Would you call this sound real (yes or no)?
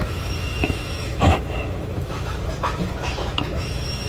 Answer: no